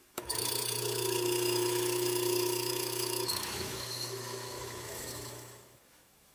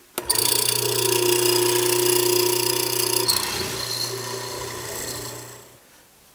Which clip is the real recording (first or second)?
second